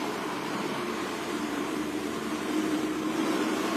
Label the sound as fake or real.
fake